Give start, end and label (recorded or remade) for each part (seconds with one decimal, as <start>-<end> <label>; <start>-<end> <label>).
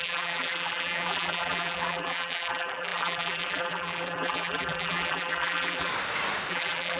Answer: 0.0-5.9 remade; 5.9-6.5 recorded; 6.5-7.0 remade